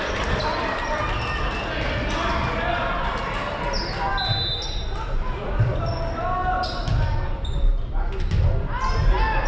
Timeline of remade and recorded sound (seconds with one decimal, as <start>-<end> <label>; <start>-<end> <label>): 0.0-9.5 recorded